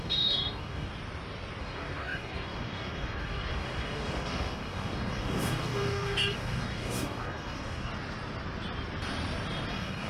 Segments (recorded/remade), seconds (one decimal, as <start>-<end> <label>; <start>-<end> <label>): 0.0-0.9 remade; 0.9-1.6 recorded; 1.6-7.9 remade; 7.9-9.7 recorded; 9.7-10.1 remade